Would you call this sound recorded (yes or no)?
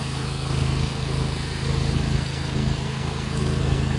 no